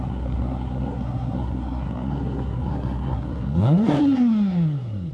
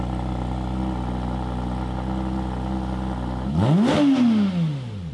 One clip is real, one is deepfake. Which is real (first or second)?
second